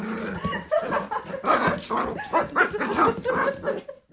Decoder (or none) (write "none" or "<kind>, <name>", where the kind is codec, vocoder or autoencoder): none